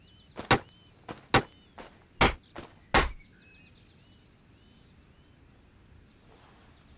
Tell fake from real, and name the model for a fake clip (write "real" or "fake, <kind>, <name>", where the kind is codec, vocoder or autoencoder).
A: real